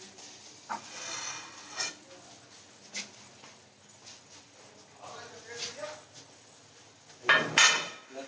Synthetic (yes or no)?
no